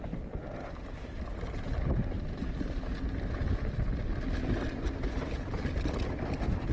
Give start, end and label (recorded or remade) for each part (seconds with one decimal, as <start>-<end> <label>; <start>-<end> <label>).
0.0-6.7 recorded